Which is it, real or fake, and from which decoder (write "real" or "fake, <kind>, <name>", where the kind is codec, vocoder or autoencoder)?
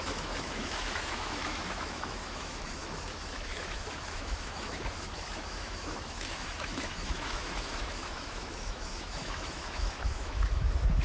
fake, autoencoder, DAC-VAE